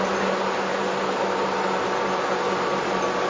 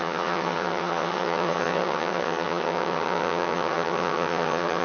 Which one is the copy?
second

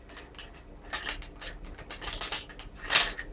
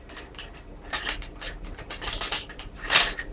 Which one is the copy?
second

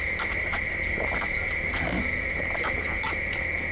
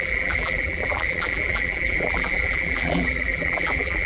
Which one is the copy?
second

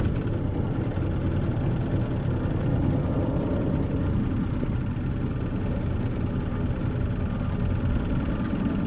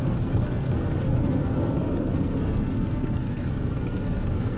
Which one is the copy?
second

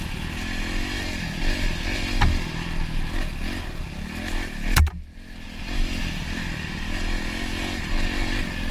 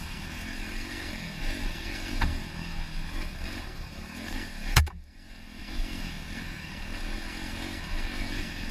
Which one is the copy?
second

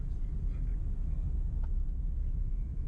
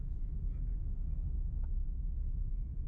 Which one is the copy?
second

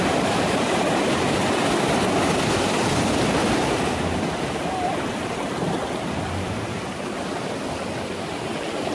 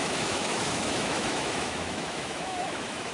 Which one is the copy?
second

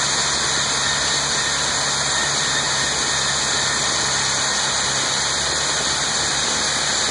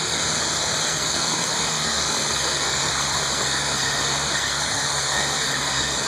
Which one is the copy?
second